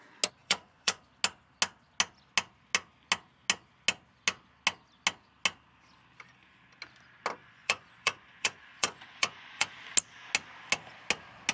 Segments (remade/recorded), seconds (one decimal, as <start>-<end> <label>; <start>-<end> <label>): 0.0-0.4 recorded; 0.4-1.0 remade; 1.0-7.4 recorded; 7.4-9.7 remade; 9.7-11.5 recorded